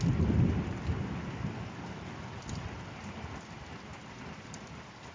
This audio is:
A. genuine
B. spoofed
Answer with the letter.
A